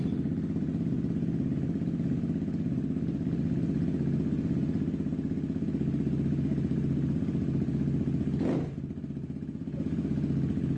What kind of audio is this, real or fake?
real